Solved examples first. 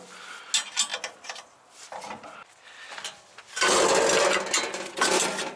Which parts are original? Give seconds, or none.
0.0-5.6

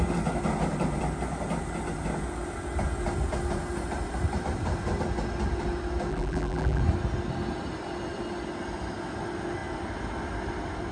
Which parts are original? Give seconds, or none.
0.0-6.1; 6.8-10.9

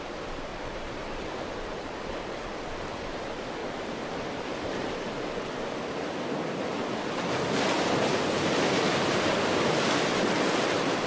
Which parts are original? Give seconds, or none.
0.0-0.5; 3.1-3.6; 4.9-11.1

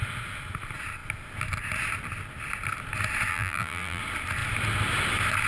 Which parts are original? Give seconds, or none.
0.0-3.3; 4.0-5.5

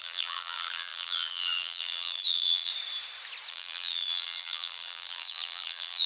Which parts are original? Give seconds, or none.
2.7-3.5

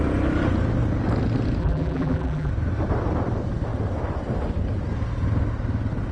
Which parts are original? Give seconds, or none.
0.0-1.6; 2.5-6.1

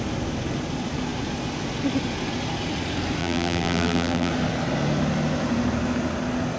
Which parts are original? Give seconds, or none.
0.0-3.2; 4.3-6.6

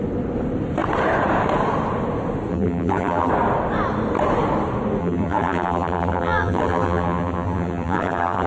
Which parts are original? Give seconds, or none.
0.0-2.5; 3.3-5.0